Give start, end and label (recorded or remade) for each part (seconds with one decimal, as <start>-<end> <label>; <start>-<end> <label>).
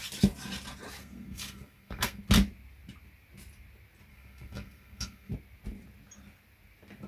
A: 0.0-1.0 recorded; 1.0-2.2 remade; 2.2-4.1 recorded; 4.1-5.3 remade; 5.3-7.1 recorded